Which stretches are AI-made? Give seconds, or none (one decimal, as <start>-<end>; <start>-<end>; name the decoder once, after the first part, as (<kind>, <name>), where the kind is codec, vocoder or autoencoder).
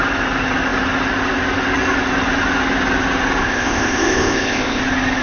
3.4-4.8 (codec, ZipCodec)